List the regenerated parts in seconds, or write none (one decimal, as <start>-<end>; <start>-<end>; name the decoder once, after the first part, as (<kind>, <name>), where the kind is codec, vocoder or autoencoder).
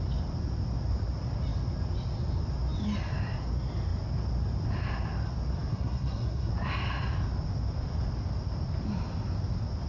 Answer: 5.7-6.5 (codec, SNAC)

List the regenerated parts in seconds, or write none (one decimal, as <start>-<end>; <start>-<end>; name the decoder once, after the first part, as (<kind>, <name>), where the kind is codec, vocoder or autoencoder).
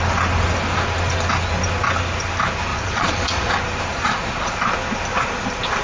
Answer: 2.7-3.5 (vocoder, Vocos); 3.9-4.6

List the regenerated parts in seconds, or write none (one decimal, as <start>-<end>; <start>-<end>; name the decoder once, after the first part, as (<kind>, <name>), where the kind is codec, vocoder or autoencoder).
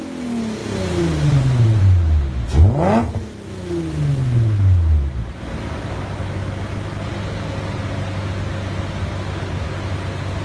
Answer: 0.6-1.8 (vocoder, BigVGAN v2)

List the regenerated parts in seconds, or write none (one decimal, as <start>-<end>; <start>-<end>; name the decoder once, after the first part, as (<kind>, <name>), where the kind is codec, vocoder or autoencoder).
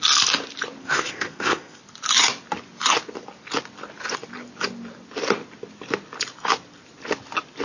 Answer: 0.8-1.8 (codec, ZipCodec)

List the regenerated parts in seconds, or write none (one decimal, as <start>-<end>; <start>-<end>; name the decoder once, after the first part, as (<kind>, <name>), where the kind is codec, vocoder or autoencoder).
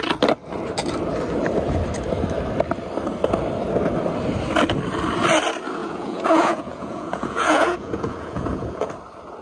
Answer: 5.8-8.9 (vocoder, Vocos)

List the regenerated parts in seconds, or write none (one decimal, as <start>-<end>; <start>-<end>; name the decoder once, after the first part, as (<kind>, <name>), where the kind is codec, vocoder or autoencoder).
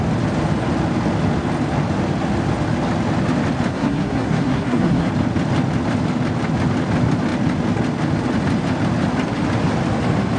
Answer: 3.7-5.1 (codec, SNAC)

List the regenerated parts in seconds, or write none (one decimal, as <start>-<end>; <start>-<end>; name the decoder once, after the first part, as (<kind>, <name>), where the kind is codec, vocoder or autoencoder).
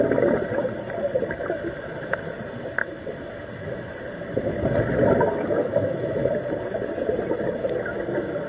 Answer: 2.8-4.0 (autoencoder, DAC-VAE); 5.4-6.3